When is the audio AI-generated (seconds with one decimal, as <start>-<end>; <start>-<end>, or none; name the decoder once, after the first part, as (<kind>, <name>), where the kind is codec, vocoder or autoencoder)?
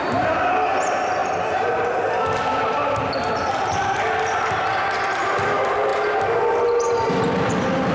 none